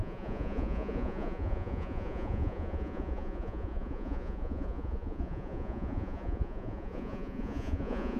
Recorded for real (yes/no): no